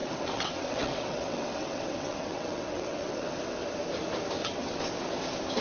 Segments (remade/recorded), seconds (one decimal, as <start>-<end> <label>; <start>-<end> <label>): 0.0-3.4 remade; 3.4-4.4 recorded; 4.4-4.9 remade; 4.9-5.6 recorded